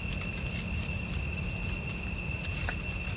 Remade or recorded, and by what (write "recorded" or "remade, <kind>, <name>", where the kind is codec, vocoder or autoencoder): recorded